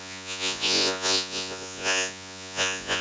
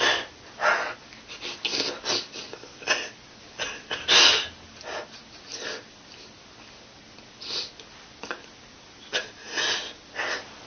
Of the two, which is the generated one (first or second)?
first